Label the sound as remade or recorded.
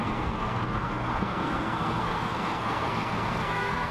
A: remade